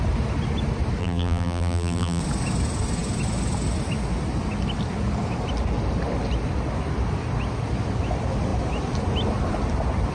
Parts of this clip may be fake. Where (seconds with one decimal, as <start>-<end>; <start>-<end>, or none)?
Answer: 1.0-2.2